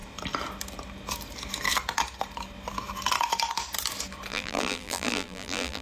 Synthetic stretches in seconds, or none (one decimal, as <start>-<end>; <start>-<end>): 4.3-5.8